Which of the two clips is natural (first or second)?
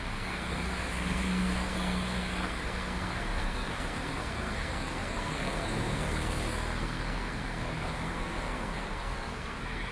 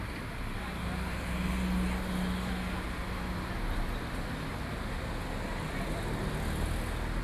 second